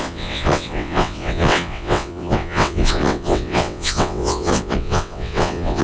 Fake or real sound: fake